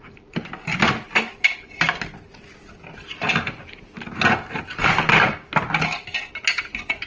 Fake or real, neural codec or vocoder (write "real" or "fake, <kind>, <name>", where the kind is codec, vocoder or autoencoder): real